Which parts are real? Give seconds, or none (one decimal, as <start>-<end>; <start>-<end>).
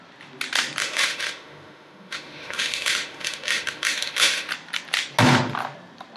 0.0-0.8; 4.5-6.2